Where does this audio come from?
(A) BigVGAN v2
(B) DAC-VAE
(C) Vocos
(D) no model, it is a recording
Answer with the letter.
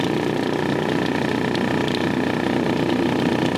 D